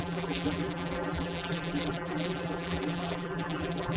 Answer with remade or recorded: remade